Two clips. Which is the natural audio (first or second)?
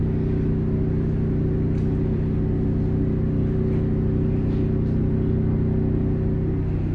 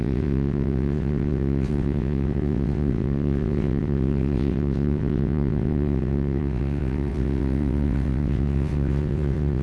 first